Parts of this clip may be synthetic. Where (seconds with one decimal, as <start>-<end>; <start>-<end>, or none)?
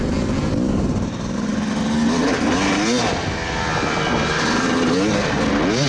none